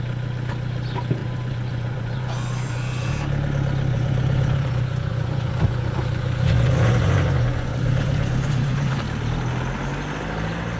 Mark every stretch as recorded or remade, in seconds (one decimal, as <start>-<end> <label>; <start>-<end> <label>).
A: 0.0-1.2 recorded; 1.2-3.1 remade; 3.1-3.9 recorded; 3.9-9.0 remade; 9.0-10.8 recorded